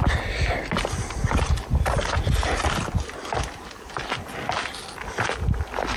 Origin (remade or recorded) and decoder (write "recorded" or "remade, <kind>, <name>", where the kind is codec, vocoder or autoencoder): recorded